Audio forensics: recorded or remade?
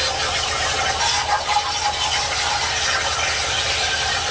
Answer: recorded